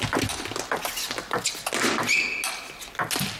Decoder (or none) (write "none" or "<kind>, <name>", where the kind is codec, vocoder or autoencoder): none